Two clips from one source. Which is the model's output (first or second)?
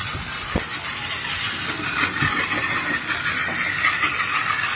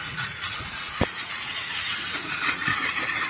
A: second